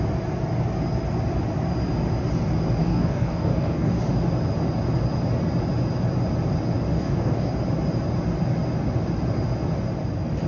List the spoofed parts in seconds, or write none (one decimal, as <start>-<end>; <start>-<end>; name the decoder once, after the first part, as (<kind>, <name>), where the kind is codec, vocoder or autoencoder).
2.8-4.0 (codec, DAC); 6.9-7.5